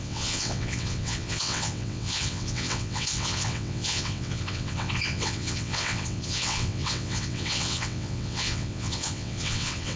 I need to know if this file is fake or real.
fake